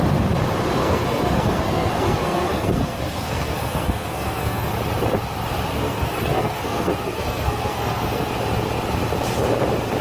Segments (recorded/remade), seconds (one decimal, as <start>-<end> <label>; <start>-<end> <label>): 0.0-0.8 recorded; 0.8-4.7 remade; 4.7-5.7 recorded; 5.7-8.3 remade; 8.3-10.0 recorded